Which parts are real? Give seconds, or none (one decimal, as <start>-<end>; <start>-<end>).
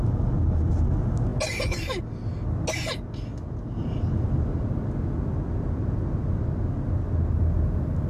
0.0-8.1